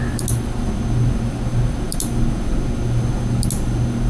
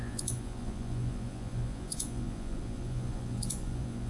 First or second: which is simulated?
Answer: second